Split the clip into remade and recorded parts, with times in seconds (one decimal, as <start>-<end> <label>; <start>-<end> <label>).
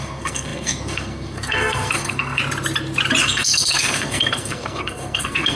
0.0-2.4 remade; 2.4-3.2 recorded; 3.2-5.6 remade